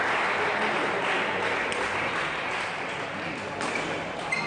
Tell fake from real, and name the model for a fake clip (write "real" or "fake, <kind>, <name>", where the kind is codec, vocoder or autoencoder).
real